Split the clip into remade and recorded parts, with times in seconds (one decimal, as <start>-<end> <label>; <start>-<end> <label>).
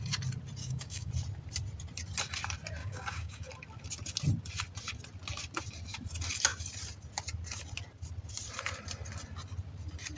0.0-0.6 recorded; 0.6-1.1 remade; 1.1-2.8 recorded; 2.8-3.5 remade; 3.5-10.2 recorded